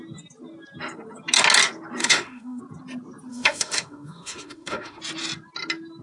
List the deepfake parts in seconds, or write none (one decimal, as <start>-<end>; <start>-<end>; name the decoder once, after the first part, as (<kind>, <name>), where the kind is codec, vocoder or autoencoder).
2.0-2.6 (autoencoder, DAC-VAE); 3.3-5.0